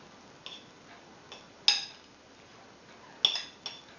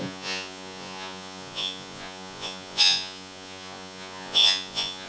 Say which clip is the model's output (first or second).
second